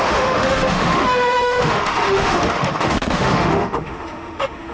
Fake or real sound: fake